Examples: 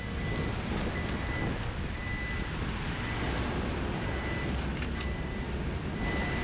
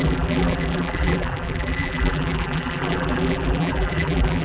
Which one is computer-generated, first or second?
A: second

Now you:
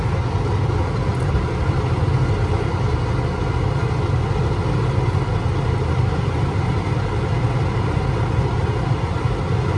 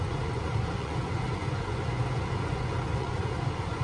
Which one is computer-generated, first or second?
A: second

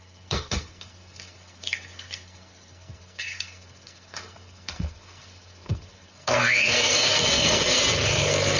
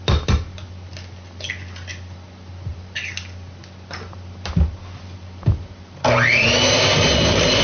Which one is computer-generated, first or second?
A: first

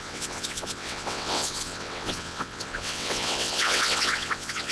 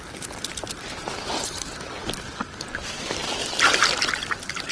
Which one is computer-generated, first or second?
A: first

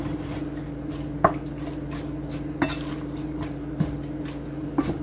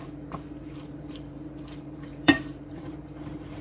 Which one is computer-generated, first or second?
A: second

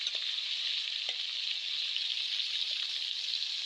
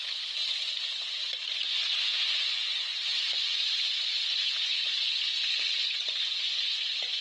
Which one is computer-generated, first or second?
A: second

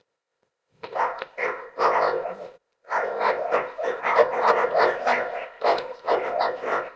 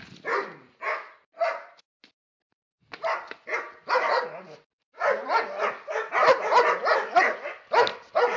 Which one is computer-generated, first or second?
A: first